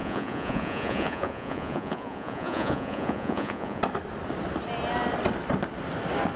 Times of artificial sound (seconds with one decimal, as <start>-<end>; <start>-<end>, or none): 0.0-3.8